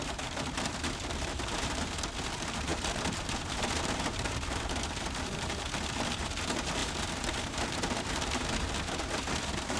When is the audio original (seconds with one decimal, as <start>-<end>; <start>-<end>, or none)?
none